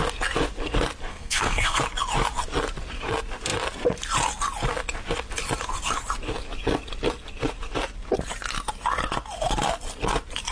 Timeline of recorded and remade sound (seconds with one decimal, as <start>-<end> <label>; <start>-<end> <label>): 0.0-1.1 recorded; 1.1-1.8 remade; 1.8-10.5 recorded

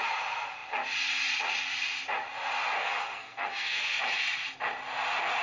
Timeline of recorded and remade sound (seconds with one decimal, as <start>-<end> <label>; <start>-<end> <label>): 0.0-2.8 recorded; 2.8-4.0 remade; 4.0-5.4 recorded

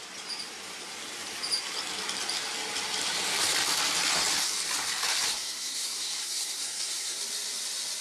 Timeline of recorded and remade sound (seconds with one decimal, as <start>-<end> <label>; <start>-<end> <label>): 0.0-5.3 recorded; 5.3-7.2 remade; 7.2-8.0 recorded

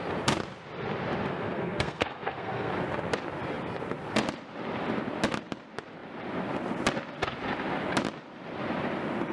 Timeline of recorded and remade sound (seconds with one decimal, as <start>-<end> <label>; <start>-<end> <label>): 0.0-1.3 recorded; 1.3-2.7 remade; 2.7-9.3 recorded

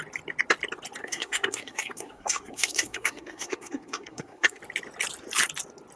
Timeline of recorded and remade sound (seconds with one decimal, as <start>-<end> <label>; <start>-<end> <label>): 0.0-1.0 recorded; 1.0-4.6 remade; 4.6-6.0 recorded